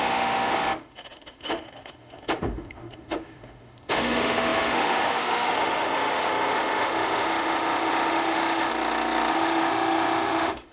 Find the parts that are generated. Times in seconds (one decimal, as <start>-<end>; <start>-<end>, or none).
0.0-8.7; 9.3-10.7